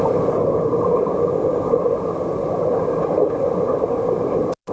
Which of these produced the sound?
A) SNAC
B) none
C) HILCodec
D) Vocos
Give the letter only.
B